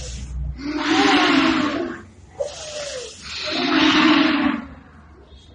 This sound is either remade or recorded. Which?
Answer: recorded